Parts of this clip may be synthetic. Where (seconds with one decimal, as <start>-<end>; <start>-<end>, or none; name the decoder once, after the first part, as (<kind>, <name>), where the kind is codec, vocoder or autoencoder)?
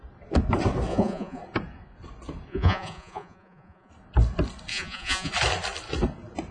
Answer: 0.9-1.4 (vocoder, Vocos); 2.5-3.9; 4.7-5.3